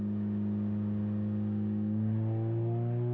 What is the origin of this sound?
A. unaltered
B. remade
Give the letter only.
A